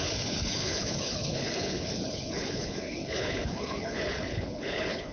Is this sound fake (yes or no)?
yes